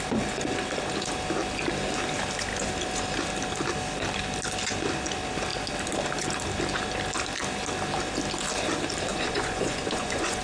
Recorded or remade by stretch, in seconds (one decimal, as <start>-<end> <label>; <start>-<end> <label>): 0.0-9.1 recorded; 9.1-10.4 remade